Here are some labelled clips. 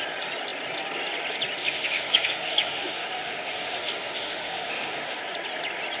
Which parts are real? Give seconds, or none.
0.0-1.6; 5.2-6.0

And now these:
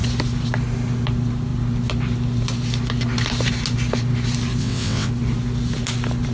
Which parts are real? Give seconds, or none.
0.0-4.6; 5.1-6.3

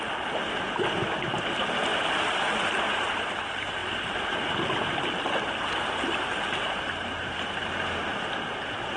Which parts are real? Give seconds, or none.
0.0-1.9; 2.7-8.0

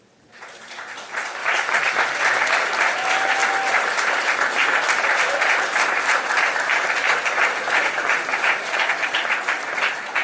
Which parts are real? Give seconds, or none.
0.0-10.2

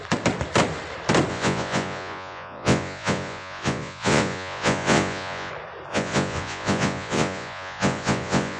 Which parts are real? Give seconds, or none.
0.0-1.3; 5.5-5.9